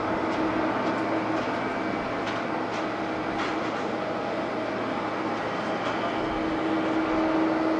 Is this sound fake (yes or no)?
no